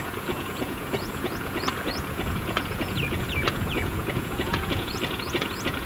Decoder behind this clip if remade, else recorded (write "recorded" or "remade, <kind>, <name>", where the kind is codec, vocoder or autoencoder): remade, vocoder, Vocos